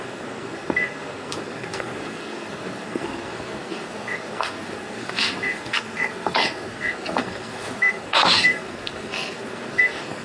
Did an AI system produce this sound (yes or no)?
yes